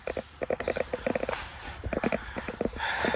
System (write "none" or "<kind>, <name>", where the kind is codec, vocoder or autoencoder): none